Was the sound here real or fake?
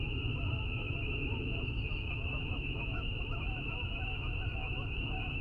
fake